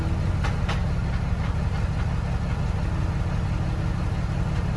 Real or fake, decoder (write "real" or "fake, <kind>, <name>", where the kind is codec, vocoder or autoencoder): real